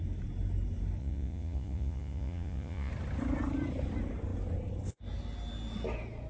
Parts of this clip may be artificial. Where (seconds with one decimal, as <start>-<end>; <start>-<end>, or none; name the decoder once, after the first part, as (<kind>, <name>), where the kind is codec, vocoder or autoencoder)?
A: 1.0-2.9 (vocoder, Vocos)